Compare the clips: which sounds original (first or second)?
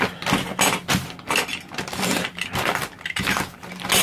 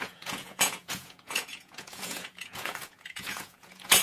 first